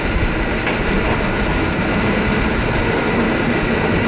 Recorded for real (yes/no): yes